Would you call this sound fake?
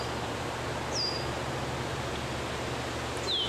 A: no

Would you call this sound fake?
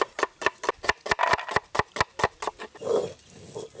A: no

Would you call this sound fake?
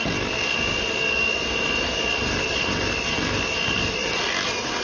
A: no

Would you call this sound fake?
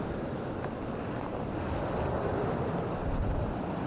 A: no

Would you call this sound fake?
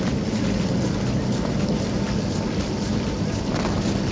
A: no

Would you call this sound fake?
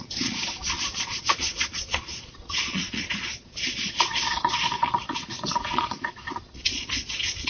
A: yes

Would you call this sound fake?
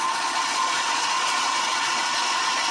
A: yes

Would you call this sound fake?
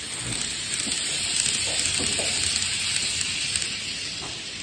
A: no